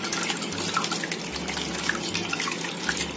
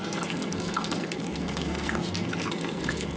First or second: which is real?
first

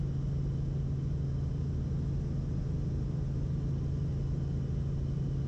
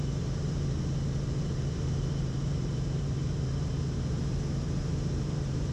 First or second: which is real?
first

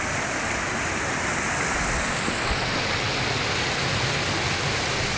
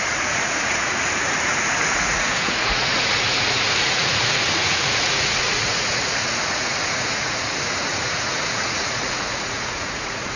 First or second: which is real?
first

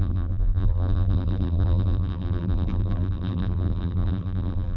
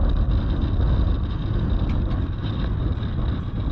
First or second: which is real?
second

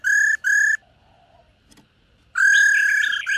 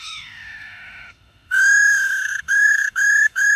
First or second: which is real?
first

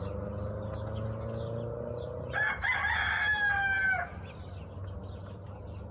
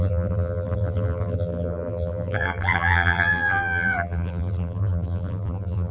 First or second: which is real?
first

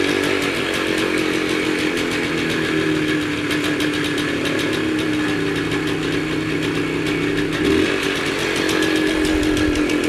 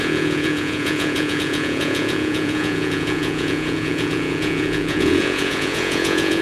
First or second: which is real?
first